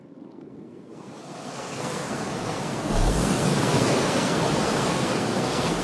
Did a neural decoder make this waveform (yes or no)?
yes